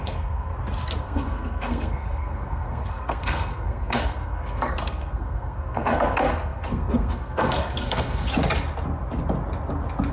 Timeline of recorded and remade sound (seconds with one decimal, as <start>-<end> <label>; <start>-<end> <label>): 0.0-0.5 remade; 0.5-1.0 recorded; 1.0-8.3 remade; 8.3-10.1 recorded